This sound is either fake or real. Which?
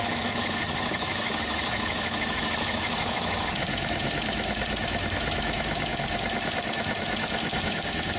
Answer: fake